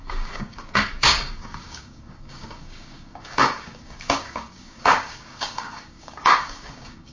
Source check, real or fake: fake